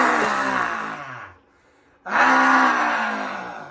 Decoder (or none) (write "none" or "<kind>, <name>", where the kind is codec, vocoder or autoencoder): none